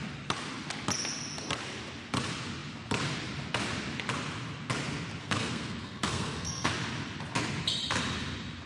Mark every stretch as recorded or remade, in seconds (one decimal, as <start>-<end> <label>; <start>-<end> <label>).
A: 0.0-5.2 recorded; 5.2-6.7 remade; 6.7-8.7 recorded